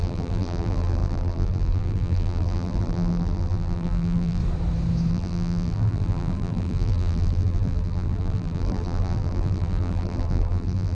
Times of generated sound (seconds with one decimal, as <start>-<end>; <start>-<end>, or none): 0.0-4.4; 5.1-10.9